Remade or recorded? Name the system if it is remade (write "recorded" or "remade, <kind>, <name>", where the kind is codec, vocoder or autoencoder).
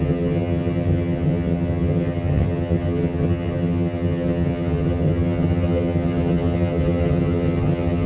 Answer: remade, vocoder, HiFi-GAN